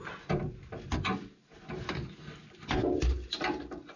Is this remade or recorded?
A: recorded